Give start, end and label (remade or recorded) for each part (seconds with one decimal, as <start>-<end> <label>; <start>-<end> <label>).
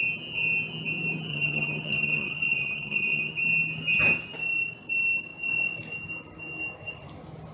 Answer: 0.0-1.3 recorded; 1.3-3.3 remade; 3.3-7.5 recorded